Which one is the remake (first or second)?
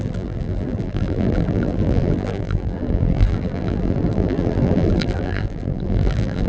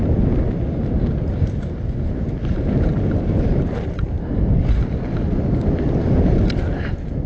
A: first